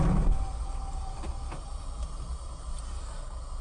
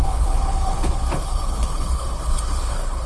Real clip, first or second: first